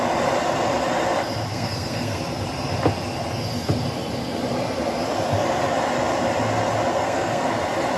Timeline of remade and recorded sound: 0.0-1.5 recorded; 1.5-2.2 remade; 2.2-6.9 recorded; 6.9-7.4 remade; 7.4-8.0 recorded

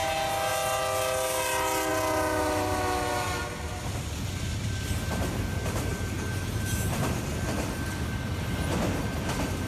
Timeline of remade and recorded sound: 0.0-5.9 recorded; 5.9-7.3 remade; 7.3-9.7 recorded

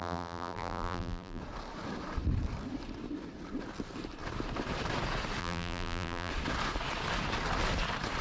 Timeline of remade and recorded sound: 0.0-1.4 remade; 1.4-5.4 recorded; 5.4-6.3 remade; 6.3-8.2 recorded

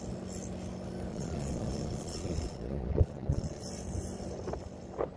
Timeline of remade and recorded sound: 0.0-1.1 recorded; 1.1-3.6 remade; 3.6-5.2 recorded